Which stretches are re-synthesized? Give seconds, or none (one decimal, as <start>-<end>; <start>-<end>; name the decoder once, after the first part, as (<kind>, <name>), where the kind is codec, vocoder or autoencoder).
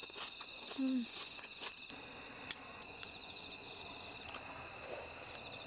0.0-1.7 (vocoder, Vocos); 2.7-3.7